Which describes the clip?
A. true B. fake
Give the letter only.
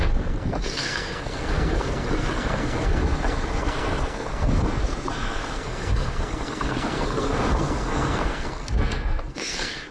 B